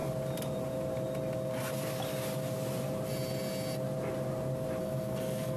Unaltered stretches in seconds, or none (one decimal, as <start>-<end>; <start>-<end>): 0.0-4.8